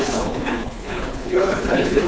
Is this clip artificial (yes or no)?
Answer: yes